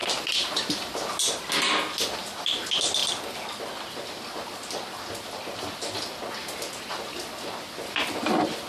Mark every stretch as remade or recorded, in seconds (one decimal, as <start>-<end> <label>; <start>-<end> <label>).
0.0-8.7 recorded